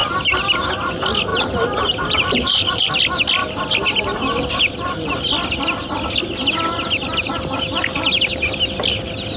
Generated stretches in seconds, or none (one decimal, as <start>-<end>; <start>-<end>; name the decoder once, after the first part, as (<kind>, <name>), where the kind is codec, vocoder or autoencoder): 1.3-2.9 (vocoder, BigVGAN v2)